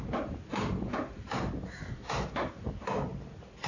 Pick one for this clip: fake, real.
real